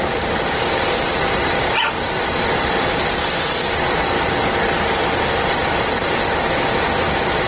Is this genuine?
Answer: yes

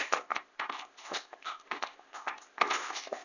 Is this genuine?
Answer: no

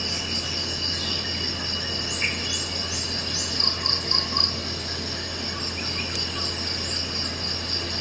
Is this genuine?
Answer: yes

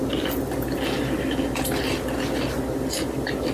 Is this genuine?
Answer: yes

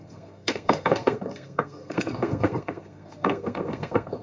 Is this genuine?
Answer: no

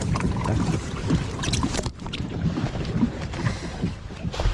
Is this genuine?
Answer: no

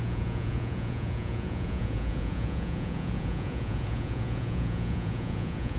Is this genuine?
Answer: no